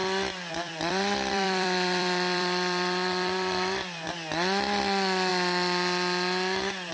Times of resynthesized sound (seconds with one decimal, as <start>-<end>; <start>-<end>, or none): 0.0-4.1